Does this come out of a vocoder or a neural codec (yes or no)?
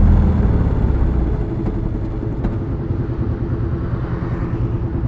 no